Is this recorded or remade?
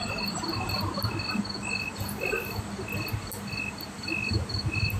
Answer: recorded